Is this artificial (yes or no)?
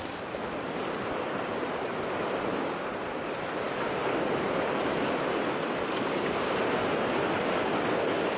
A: no